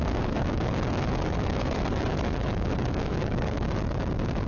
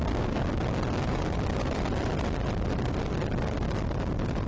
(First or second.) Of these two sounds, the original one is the second